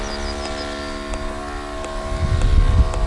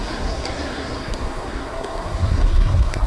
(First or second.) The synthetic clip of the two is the second